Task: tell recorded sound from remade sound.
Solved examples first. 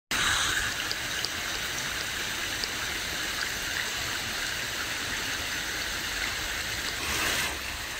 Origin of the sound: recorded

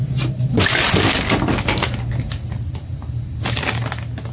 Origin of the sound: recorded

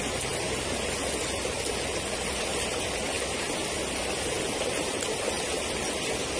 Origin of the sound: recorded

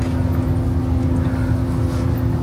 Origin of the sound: recorded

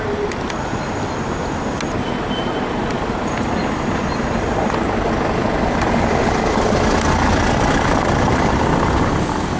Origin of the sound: recorded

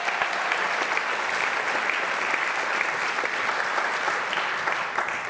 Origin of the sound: recorded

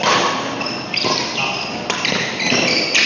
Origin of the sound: remade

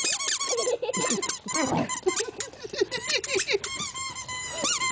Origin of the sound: remade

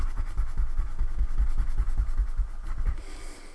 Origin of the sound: recorded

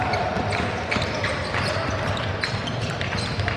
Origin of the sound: recorded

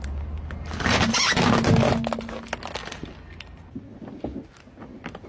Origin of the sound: recorded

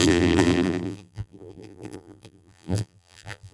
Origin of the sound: remade